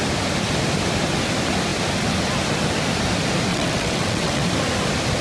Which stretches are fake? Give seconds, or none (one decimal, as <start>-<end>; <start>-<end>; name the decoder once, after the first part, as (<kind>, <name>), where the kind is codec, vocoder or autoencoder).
3.5-4.4 (vocoder, WaveNeXt)